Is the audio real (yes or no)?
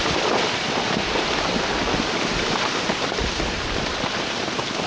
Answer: yes